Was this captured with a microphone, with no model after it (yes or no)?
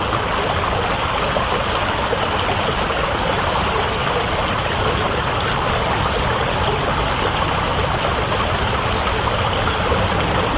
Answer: yes